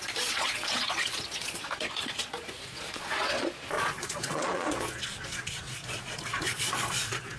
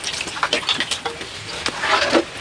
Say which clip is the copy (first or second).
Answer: first